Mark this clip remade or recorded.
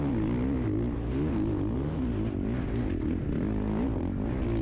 recorded